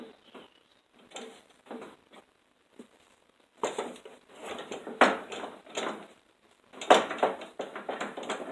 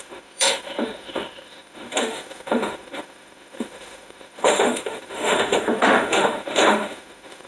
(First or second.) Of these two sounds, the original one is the first